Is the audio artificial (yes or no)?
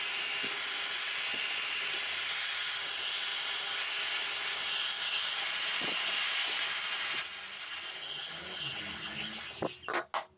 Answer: no